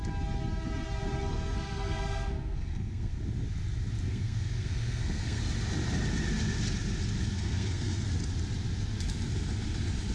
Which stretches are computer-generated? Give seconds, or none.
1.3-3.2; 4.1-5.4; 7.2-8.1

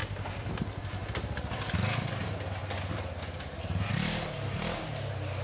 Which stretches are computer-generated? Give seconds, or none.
none